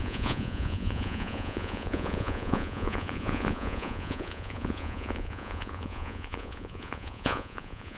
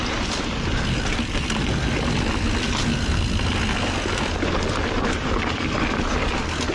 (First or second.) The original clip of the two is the second